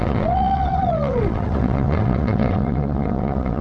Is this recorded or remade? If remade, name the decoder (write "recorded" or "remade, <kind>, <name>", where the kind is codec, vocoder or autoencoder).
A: remade, vocoder, WaveNeXt